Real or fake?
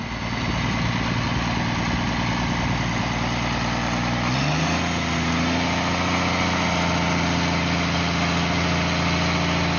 real